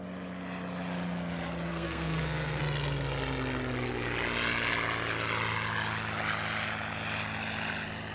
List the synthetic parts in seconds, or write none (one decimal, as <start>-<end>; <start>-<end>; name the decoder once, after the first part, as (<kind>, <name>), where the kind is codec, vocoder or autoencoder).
1.7-2.6 (codec, SNAC)